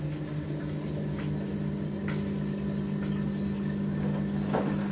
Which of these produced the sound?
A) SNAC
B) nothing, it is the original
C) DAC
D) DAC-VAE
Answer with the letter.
B